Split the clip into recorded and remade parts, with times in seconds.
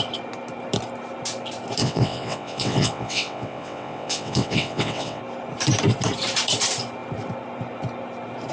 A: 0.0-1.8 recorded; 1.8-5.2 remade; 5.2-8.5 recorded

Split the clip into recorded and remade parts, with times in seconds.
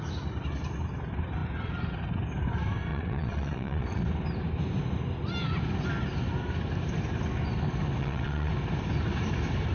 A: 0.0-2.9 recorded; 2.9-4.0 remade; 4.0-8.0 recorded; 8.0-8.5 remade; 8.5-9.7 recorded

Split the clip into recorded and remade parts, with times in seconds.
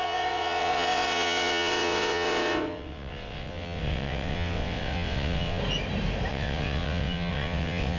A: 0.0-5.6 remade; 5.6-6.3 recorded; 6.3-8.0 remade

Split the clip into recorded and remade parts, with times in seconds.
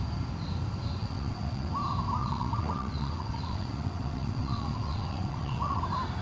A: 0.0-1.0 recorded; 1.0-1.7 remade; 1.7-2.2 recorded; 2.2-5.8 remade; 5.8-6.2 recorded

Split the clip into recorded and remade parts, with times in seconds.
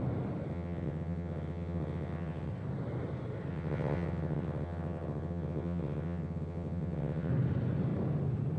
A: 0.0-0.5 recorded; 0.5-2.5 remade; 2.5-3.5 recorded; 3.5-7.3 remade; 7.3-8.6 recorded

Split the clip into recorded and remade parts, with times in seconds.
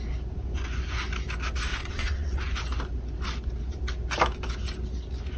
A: 0.0-1.7 recorded; 1.7-2.4 remade; 2.4-5.4 recorded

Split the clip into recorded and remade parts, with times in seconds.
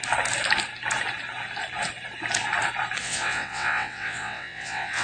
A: 0.0-3.0 recorded; 3.0-5.0 remade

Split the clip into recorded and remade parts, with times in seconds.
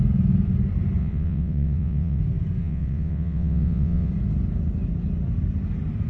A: 0.0-1.0 recorded; 1.0-2.2 remade; 2.2-2.6 recorded; 2.6-4.1 remade; 4.1-6.1 recorded